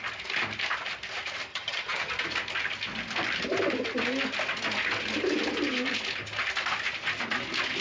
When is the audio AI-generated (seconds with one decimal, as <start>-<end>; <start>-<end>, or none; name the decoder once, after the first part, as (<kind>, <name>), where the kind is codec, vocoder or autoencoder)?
1.5-2.1 (vocoder, HiFi-GAN)